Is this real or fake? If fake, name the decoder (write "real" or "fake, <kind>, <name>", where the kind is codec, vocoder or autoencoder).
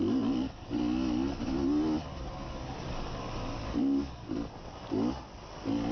real